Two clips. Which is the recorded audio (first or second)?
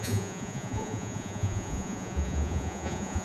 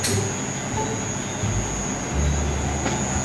second